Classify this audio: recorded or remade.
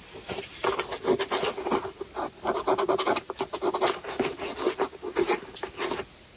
recorded